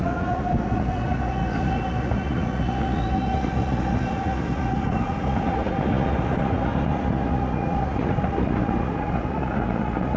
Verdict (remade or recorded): remade